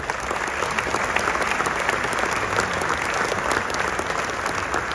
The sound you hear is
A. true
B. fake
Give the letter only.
A